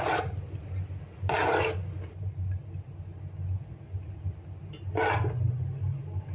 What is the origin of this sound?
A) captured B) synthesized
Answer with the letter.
A